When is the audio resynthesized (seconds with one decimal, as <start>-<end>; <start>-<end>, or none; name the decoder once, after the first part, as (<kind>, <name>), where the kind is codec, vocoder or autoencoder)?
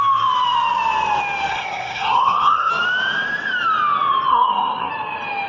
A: 1.5-2.7 (codec, SNAC); 4.3-4.9